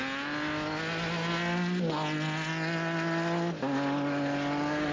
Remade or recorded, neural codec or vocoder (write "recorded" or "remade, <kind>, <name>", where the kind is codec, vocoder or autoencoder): recorded